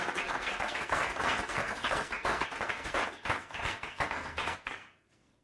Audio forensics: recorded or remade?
remade